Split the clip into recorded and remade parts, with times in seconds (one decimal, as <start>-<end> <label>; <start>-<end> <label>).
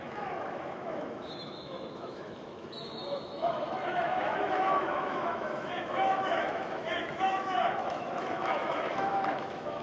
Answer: 0.0-9.8 remade